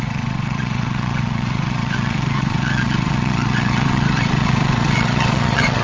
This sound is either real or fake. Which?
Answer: fake